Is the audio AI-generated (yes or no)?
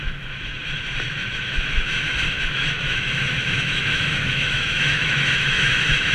yes